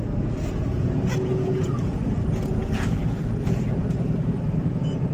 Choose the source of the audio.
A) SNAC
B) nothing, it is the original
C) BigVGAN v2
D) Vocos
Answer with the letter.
D